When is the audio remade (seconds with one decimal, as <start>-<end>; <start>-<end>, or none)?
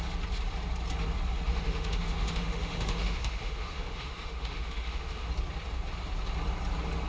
1.5-5.3